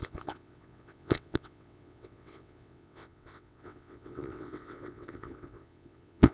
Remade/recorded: remade